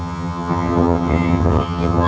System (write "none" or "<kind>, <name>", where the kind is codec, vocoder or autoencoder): vocoder, HiFi-GAN